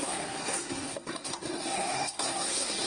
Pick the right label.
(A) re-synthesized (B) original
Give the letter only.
A